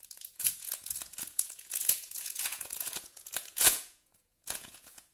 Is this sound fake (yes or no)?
yes